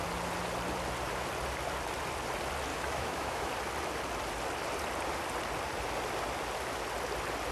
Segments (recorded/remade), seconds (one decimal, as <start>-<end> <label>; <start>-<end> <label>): 0.0-2.7 recorded; 2.7-3.5 remade; 3.5-7.5 recorded